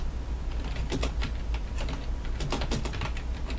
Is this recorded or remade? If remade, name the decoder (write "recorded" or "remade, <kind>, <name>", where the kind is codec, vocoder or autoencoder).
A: recorded